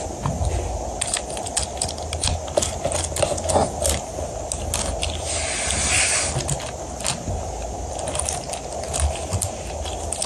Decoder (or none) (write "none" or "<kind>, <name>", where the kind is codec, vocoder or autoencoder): none